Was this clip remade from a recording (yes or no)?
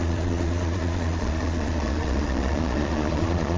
yes